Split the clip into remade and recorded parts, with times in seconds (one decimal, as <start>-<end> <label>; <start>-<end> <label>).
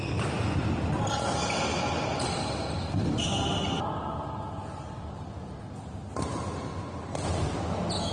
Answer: 0.0-8.1 recorded